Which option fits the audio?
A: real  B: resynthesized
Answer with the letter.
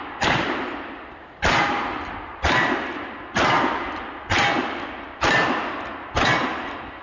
A